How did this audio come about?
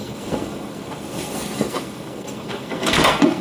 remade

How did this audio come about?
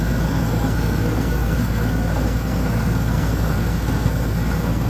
remade